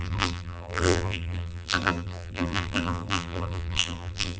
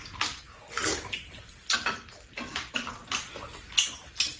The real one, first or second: second